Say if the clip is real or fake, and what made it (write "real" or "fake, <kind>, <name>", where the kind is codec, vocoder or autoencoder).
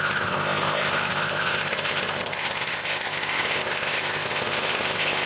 fake, codec, ZipCodec